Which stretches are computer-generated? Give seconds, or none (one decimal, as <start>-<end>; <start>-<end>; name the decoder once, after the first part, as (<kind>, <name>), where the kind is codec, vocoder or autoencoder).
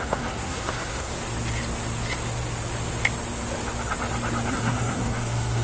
0.0-1.1 (codec, SNAC); 4.5-5.6